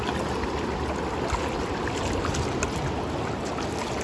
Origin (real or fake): real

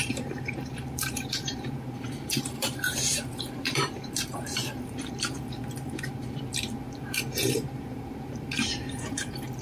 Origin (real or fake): fake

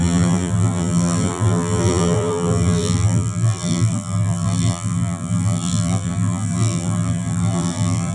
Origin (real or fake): fake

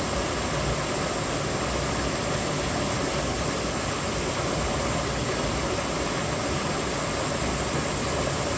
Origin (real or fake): real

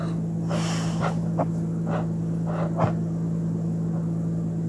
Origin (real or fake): real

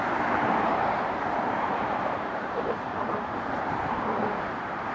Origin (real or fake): fake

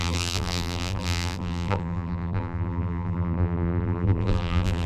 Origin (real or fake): fake